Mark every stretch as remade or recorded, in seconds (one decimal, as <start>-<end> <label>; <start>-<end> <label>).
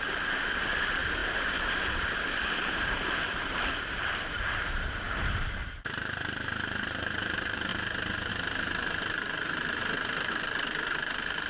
0.0-7.7 remade; 7.7-8.3 recorded; 8.3-9.8 remade; 9.8-10.3 recorded; 10.3-11.5 remade